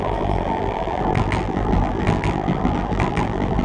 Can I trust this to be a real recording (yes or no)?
no